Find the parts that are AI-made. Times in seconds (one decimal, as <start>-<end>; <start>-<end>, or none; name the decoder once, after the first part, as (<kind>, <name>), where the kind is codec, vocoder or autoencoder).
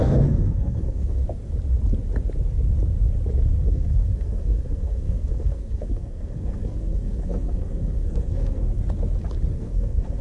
0.0-1.2 (codec, SNAC); 3.6-8.7; 9.5-10.2